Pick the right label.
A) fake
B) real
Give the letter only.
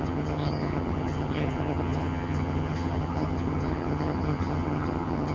A